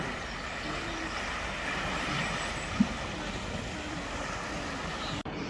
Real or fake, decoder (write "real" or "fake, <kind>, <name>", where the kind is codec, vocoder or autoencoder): real